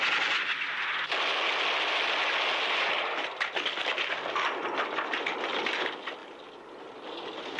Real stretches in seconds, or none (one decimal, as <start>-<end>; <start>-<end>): 0.0-7.6